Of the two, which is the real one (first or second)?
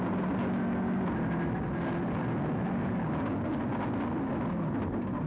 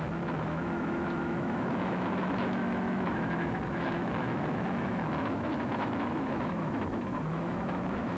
first